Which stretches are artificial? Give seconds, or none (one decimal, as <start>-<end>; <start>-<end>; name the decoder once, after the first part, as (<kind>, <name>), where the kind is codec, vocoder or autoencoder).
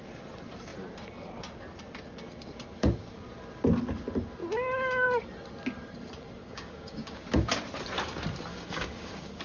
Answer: 6.4-7.2 (codec, DAC); 8.5-9.4